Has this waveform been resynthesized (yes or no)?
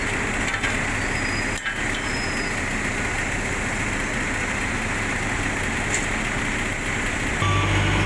no